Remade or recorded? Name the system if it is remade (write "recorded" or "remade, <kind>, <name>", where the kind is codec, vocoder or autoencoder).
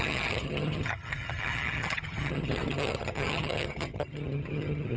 remade, vocoder, HiFi-GAN